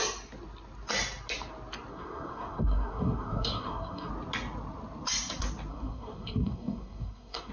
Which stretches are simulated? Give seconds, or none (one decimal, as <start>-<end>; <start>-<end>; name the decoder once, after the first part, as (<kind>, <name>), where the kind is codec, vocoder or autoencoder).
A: 1.9-4.1 (codec, SNAC); 5.7-7.5